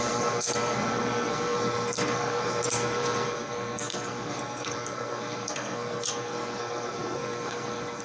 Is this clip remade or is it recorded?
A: remade